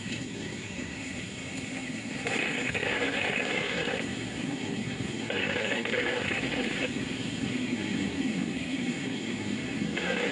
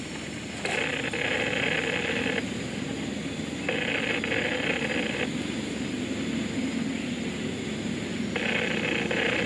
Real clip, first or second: second